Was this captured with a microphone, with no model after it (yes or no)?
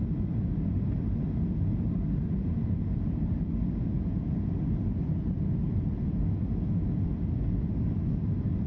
yes